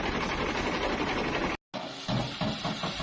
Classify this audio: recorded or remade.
recorded